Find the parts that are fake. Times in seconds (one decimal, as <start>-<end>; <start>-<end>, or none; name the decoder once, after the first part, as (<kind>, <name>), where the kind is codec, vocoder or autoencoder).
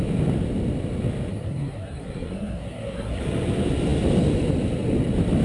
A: 1.3-3.2 (codec, SNAC)